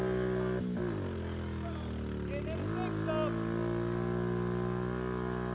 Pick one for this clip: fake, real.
real